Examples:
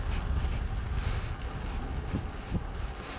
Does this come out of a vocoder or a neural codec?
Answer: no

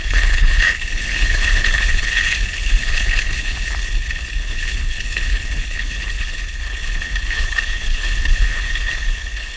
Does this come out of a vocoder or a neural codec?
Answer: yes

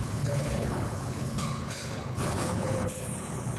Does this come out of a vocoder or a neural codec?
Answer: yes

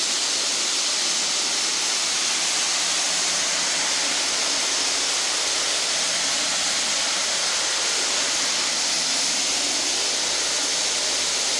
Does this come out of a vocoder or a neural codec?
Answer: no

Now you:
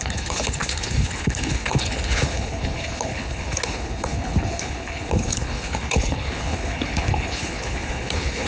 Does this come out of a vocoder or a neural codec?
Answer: yes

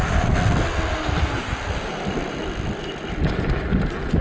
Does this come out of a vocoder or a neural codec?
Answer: no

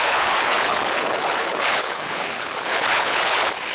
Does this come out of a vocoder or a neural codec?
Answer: yes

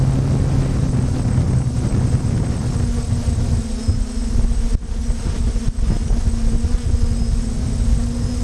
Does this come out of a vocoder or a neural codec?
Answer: no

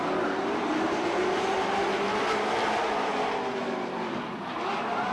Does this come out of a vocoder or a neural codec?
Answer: no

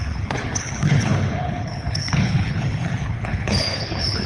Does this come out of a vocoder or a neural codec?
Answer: yes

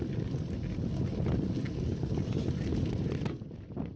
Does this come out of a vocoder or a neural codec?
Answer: no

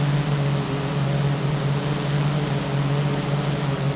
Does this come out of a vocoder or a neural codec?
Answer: no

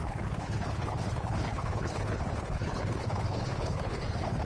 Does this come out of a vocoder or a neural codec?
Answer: yes